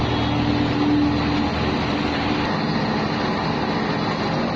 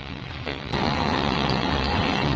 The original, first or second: first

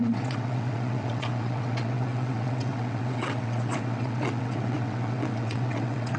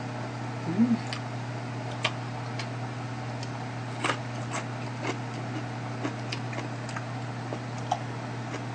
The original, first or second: second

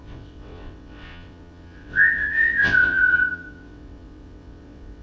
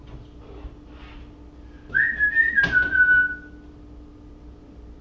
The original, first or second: second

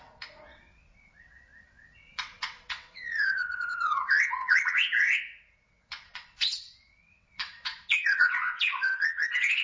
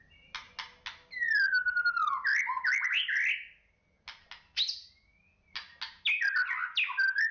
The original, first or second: second